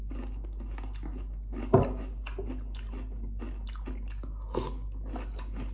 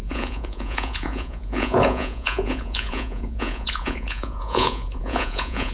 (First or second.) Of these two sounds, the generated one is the second